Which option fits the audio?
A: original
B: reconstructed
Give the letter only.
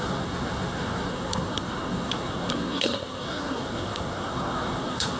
B